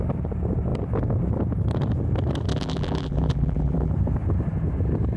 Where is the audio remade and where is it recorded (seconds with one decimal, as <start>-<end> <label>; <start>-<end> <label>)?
0.0-2.5 recorded; 2.5-3.9 remade; 3.9-5.2 recorded